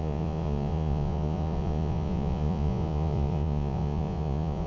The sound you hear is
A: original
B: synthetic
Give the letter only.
B